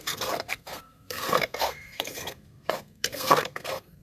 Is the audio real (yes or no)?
no